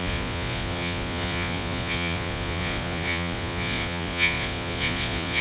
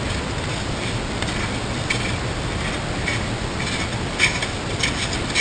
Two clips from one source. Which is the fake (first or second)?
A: first